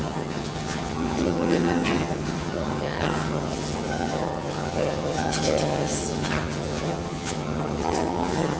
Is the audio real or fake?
fake